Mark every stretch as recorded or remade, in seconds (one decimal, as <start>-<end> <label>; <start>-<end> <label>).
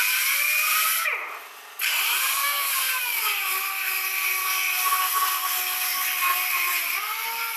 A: 0.0-2.4 recorded; 2.4-3.2 remade; 3.2-7.6 recorded